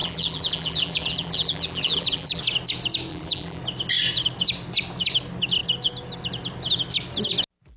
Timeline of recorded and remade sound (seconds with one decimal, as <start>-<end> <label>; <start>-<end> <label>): 0.0-2.4 remade; 2.4-3.1 recorded; 3.1-3.6 remade; 3.6-7.8 recorded